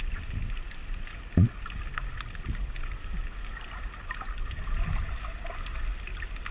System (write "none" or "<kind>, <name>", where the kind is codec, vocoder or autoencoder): none